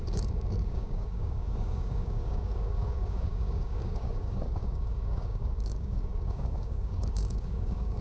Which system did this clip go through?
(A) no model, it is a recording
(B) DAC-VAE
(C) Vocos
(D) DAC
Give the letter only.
D